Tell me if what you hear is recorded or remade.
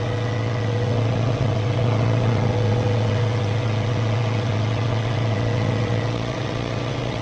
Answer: remade